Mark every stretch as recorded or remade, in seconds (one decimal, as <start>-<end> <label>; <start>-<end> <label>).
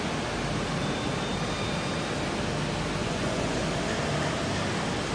0.0-3.0 recorded; 3.0-3.6 remade; 3.6-5.1 recorded